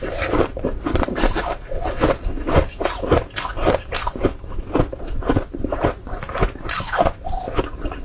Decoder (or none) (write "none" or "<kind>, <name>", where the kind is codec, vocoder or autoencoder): vocoder, BigVGAN v2